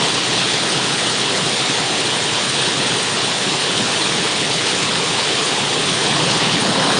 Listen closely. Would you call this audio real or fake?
fake